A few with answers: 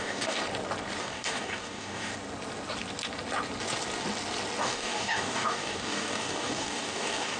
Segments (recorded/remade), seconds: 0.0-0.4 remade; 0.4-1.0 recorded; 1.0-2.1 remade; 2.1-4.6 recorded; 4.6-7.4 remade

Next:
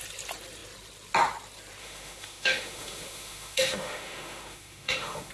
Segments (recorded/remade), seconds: 0.0-1.8 recorded; 1.8-5.3 remade

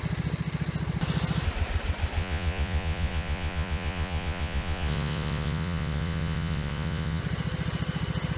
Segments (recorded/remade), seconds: 0.0-2.2 recorded; 2.2-7.2 remade; 7.2-8.4 recorded

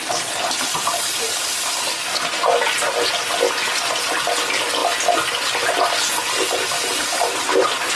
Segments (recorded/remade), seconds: 0.0-0.7 recorded; 0.7-1.8 remade; 1.8-6.9 recorded; 6.9-8.0 remade

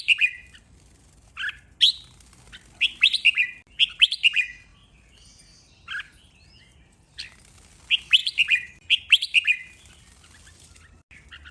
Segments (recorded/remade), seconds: 0.0-11.5 recorded

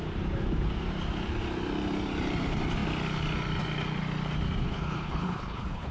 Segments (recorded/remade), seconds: 0.0-4.6 recorded; 4.6-5.9 remade

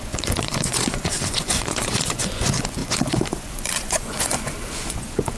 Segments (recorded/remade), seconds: 0.0-5.4 remade